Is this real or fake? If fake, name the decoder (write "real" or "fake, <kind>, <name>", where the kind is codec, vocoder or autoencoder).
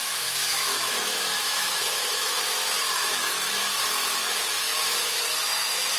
fake, autoencoder, DAC-VAE